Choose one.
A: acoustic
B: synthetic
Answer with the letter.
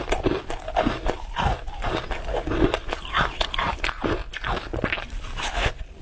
A